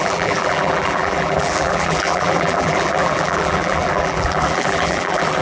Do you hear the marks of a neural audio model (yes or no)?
yes